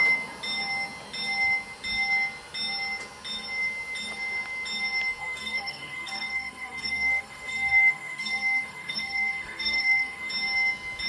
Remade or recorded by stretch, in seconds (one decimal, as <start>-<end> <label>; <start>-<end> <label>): 0.0-5.2 recorded; 5.2-10.3 remade; 10.3-11.1 recorded